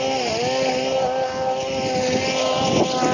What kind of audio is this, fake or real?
real